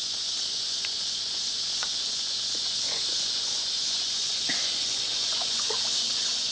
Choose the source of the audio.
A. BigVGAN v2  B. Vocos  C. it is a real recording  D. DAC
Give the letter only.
B